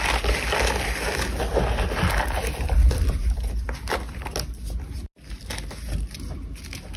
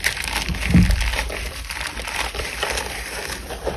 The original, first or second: first